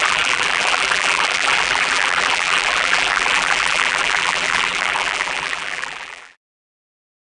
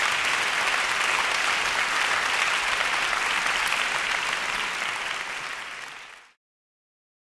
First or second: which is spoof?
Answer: first